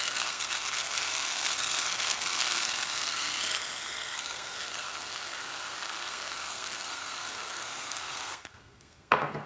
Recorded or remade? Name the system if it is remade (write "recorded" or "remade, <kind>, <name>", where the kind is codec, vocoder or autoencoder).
remade, codec, SNAC